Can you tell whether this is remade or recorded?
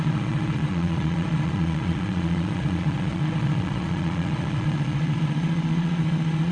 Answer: remade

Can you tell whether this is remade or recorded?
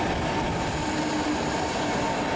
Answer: recorded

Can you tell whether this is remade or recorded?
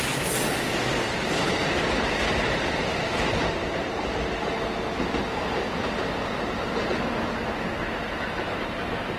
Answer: recorded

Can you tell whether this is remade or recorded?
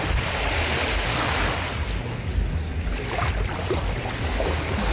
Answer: recorded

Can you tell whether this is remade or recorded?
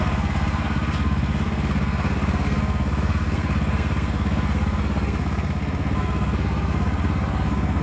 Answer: remade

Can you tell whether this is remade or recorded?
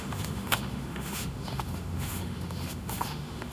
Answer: remade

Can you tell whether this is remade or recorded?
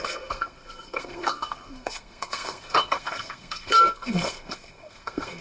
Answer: remade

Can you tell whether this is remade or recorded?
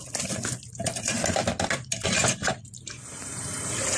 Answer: recorded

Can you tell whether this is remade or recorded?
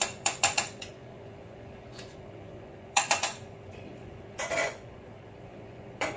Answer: remade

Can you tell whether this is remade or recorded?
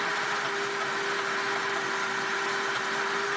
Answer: recorded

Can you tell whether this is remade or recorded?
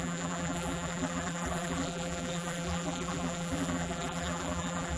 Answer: remade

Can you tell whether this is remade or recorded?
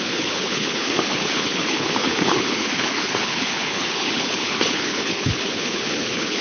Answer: remade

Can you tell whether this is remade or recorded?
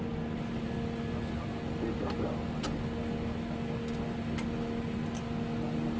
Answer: recorded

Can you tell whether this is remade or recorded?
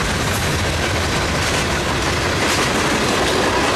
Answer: recorded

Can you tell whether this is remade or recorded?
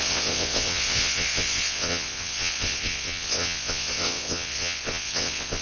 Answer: remade